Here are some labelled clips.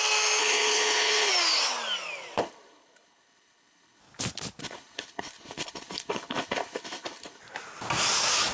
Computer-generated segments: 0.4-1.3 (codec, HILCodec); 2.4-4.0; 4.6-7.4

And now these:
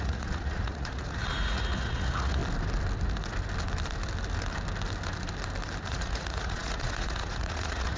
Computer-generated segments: 0.0-2.4 (vocoder, Vocos); 5.9-8.0

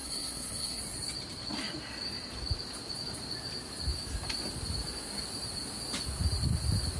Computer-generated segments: 0.0-0.8 (codec, SNAC)

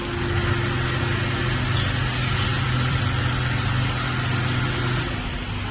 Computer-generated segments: 2.5-3.0 (vocoder, BigVGAN v2)

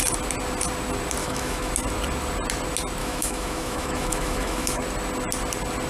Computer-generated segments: 1.2-1.7 (autoencoder, DAC-VAE); 3.0-4.8

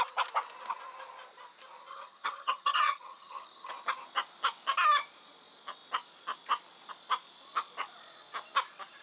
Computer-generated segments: 1.9-3.7 (vocoder, HiFi-GAN)